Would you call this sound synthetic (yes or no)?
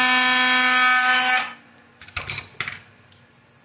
no